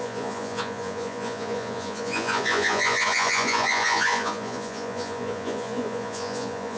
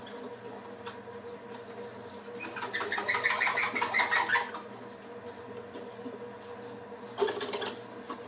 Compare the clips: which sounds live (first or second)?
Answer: second